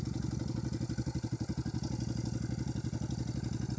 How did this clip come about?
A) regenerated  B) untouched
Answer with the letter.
B